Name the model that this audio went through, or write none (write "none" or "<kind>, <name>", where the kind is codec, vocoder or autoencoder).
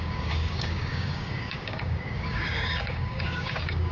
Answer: codec, DAC